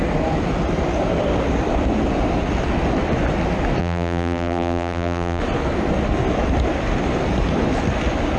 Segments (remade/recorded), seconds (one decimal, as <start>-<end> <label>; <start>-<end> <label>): 0.0-3.8 recorded; 3.8-5.4 remade; 5.4-8.4 recorded